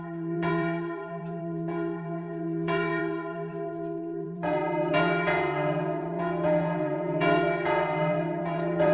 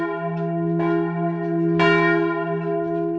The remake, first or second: first